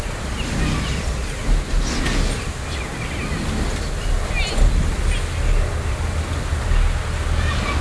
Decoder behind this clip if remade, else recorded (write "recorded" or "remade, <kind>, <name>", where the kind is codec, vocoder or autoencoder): recorded